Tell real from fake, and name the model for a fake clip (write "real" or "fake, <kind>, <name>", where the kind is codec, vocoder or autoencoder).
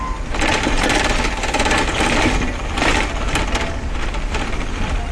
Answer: real